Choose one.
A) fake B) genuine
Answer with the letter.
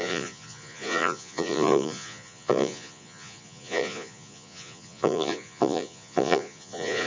A